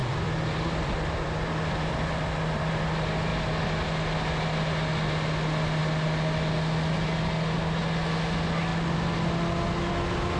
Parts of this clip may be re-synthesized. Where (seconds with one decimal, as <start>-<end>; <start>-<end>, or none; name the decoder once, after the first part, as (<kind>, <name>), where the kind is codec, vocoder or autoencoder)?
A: 0.0-2.7 (vocoder, BigVGAN v2)